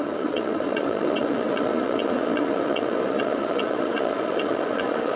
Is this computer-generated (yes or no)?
yes